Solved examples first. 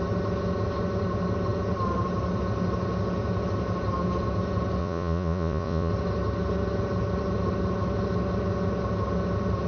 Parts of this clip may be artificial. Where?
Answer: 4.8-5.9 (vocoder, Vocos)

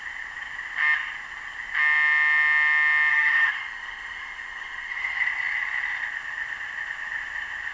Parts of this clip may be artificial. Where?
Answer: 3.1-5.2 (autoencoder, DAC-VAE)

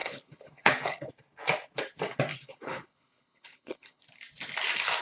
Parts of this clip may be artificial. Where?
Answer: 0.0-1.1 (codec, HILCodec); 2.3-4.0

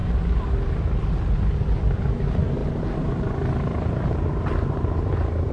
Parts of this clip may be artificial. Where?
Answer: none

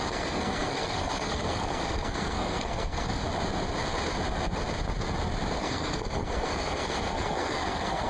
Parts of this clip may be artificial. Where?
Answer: 0.0-3.2 (codec, SNAC); 5.6-8.1

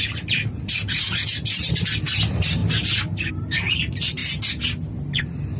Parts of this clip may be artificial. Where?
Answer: 0.0-2.6 (vocoder, BigVGAN v2); 3.3-4.2